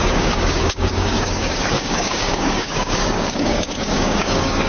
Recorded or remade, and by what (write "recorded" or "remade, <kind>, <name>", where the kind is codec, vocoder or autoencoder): remade, codec, DAC